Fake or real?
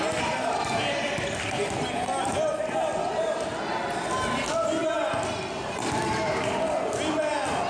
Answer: real